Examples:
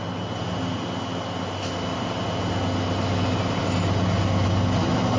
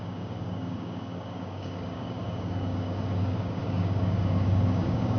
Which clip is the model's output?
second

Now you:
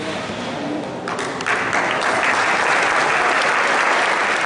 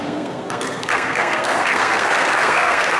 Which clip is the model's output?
second